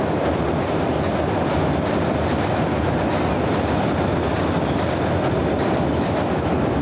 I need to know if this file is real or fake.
real